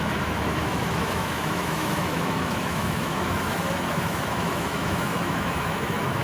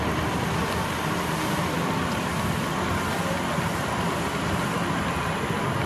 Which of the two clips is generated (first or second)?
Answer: first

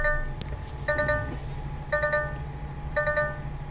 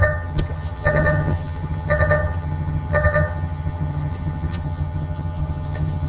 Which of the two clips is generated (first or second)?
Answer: second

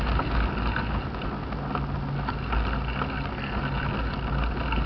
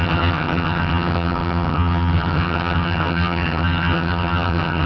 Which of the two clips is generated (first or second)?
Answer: second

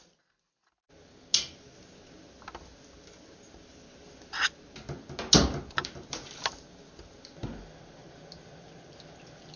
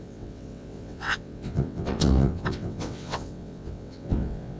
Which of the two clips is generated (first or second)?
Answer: second